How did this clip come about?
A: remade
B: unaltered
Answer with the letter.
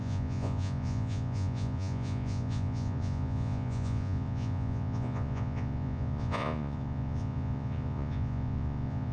A